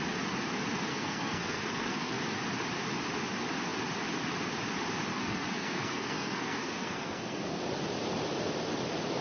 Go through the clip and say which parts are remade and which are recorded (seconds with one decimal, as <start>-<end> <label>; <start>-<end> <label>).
0.0-0.9 recorded; 0.9-2.2 remade; 2.2-5.1 recorded; 5.1-7.6 remade; 7.6-9.2 recorded